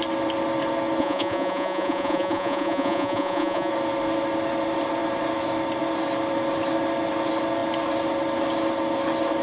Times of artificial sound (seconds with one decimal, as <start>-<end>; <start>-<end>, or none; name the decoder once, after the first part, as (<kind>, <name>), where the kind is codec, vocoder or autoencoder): 1.0-3.7 (vocoder, Vocos)